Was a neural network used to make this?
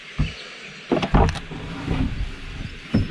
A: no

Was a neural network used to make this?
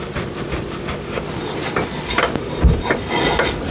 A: no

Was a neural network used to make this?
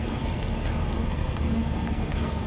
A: yes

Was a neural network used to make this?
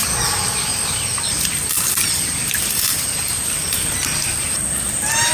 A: no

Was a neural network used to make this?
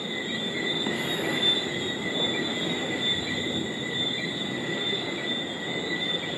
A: no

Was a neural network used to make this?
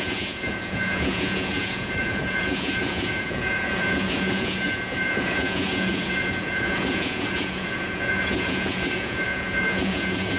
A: yes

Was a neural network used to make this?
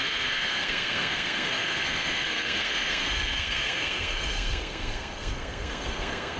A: yes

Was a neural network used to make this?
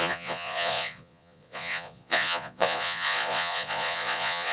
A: yes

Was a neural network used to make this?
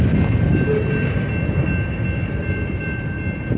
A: no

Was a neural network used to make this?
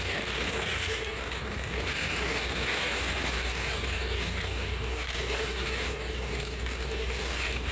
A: yes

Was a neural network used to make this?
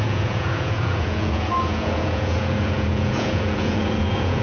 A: yes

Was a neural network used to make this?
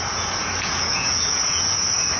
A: yes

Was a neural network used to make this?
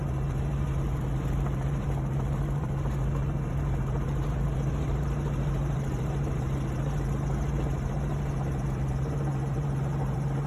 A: yes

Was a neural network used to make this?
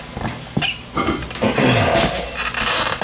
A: no